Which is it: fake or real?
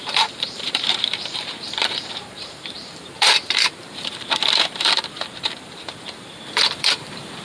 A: fake